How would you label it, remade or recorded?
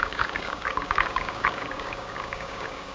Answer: remade